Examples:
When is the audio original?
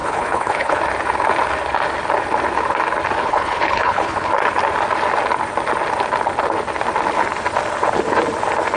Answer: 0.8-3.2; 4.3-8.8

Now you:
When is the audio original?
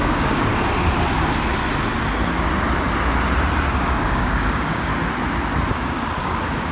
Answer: 0.5-3.8; 4.9-6.2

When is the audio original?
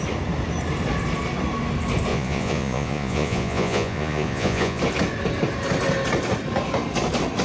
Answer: 0.0-2.1; 4.8-7.4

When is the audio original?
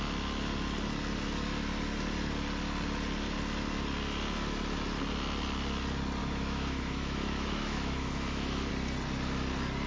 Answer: 0.0-6.2; 8.7-9.9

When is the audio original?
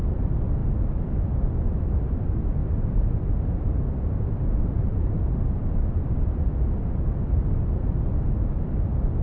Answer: 0.0-2.6; 6.3-9.2